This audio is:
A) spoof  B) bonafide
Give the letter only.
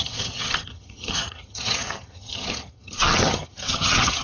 A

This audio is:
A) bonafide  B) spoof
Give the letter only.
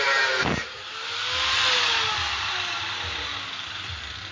A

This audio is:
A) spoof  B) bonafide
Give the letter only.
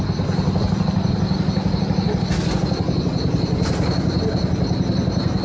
B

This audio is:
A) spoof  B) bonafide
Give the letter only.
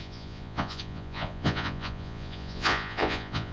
A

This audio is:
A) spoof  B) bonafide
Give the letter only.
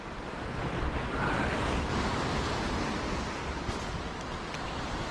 B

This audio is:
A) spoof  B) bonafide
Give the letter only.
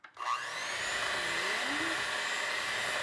B